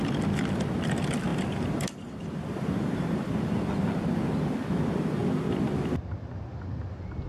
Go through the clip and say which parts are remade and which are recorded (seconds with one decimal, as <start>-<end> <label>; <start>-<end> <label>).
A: 0.0-1.3 recorded; 1.3-3.9 remade; 3.9-5.2 recorded; 5.2-6.0 remade; 6.0-7.3 recorded